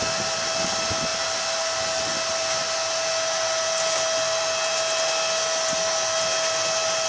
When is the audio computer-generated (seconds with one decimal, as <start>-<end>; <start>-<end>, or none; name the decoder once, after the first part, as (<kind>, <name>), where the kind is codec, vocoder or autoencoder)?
none